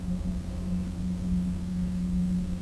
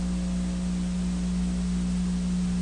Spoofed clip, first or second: first